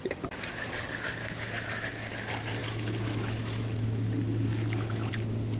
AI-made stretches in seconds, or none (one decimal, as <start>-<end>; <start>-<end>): 1.2-2.1; 2.6-5.1